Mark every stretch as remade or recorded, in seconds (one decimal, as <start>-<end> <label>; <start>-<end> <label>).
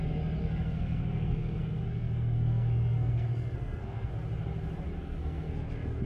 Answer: 0.0-0.4 recorded; 0.4-4.1 remade; 4.1-5.0 recorded; 5.0-6.1 remade